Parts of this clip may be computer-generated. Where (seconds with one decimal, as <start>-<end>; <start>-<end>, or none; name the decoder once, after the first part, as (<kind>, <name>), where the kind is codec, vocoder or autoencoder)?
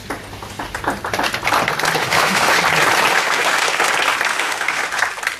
2.0-2.6 (autoencoder, DAC-VAE); 3.1-3.9; 4.3-5.0